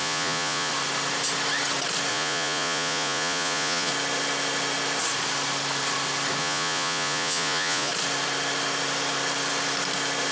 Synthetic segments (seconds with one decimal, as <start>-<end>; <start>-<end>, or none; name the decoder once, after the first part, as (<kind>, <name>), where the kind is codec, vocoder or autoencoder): 0.0-0.7 (vocoder, Vocos); 2.1-3.9; 6.4-7.9